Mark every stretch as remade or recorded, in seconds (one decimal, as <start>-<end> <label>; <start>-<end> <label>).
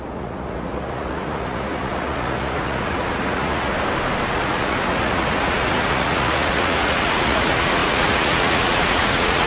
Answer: 0.0-3.7 remade; 3.7-4.3 recorded; 4.3-9.5 remade